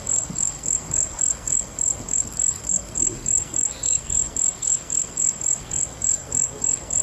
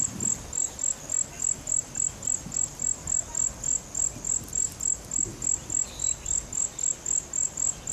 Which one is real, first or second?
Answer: second